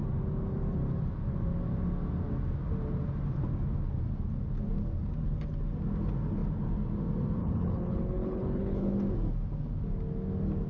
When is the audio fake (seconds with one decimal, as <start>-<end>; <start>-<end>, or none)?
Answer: 7.4-9.0